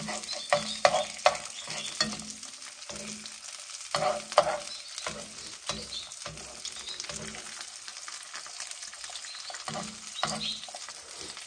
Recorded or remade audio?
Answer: recorded